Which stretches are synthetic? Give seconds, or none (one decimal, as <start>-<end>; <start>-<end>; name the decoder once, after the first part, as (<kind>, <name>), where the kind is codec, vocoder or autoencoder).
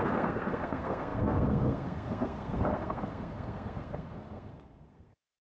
0.0-5.6 (codec, SNAC)